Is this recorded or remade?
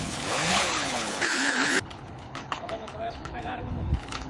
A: remade